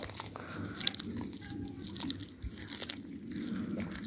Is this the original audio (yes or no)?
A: yes